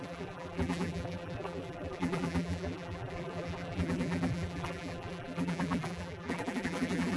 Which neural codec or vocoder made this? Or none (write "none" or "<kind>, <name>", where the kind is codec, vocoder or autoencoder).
vocoder, BigVGAN v2